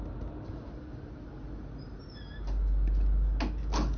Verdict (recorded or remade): recorded